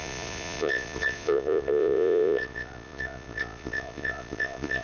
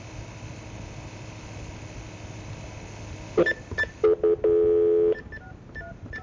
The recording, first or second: second